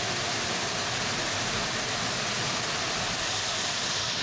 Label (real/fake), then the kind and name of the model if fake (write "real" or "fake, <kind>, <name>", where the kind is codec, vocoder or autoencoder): real